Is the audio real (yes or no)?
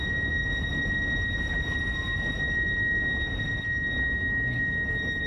yes